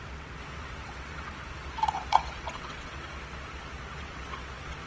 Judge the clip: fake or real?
fake